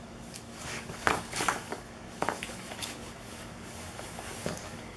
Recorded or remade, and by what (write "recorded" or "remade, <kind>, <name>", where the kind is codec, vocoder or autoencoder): remade, codec, DAC